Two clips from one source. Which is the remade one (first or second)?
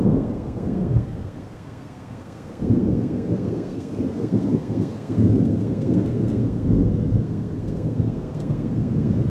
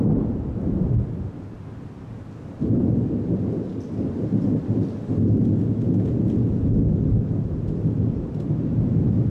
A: first